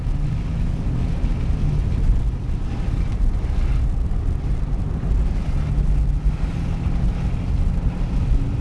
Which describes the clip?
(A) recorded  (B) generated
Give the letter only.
A